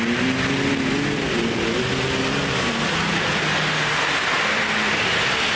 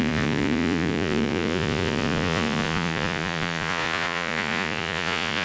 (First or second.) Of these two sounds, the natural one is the first